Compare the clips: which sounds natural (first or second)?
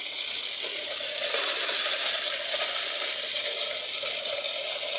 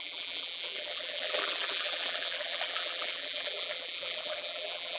first